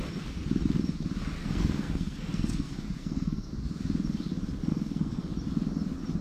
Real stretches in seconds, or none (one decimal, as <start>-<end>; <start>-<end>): 0.0-1.4; 3.5-4.7; 5.3-6.2